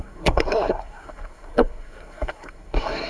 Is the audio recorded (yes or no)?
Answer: no